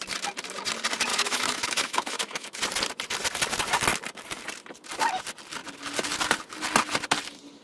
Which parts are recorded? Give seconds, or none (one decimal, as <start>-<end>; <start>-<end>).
0.0-1.1; 2.6-7.6